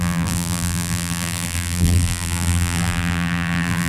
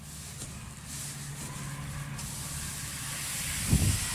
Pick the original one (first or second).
second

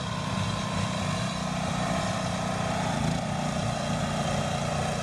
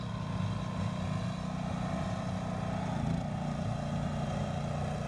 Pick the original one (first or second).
second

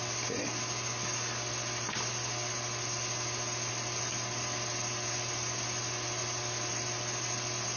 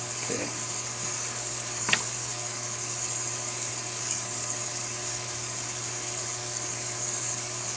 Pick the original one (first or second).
first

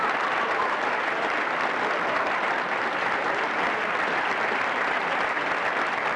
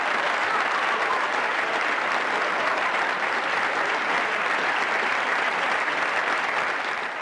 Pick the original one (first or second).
second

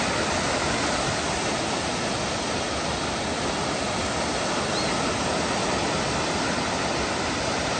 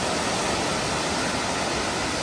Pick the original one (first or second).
second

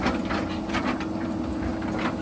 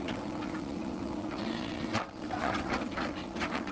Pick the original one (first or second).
first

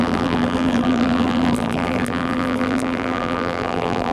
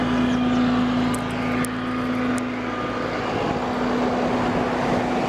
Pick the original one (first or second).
second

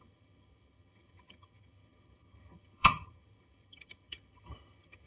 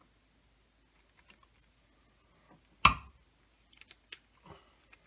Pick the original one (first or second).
second